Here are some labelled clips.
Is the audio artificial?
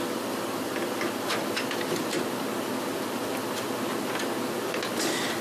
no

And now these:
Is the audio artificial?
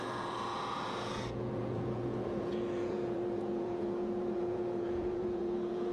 yes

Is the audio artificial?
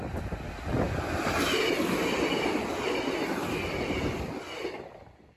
no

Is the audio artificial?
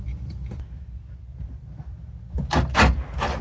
no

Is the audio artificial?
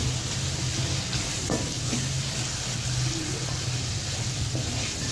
no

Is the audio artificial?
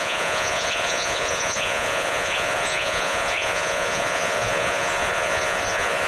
yes